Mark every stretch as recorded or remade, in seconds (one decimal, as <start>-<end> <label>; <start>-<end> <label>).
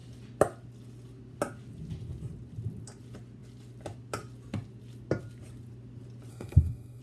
0.0-6.3 recorded; 6.3-7.0 remade